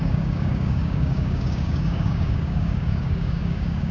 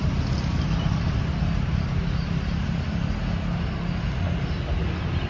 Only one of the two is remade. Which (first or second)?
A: first